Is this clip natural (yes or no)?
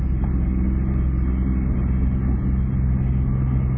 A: yes